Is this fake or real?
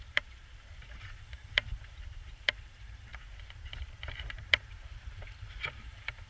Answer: fake